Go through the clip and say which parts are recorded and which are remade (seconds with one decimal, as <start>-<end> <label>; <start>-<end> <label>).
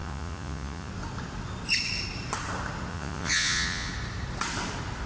0.0-0.9 remade; 0.9-2.9 recorded; 2.9-3.9 remade; 3.9-5.1 recorded